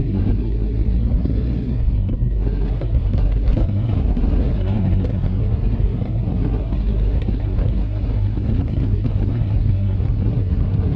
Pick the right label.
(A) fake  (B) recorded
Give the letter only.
A